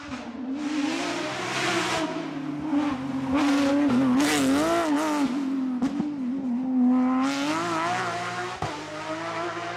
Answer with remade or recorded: recorded